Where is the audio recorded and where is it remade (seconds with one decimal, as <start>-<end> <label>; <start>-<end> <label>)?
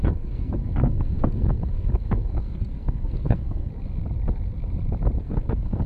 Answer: 0.0-3.7 remade; 3.7-5.2 recorded; 5.2-5.9 remade